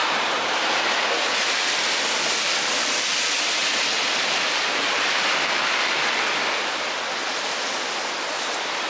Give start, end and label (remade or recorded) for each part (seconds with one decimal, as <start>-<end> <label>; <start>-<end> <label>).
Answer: 0.0-8.9 recorded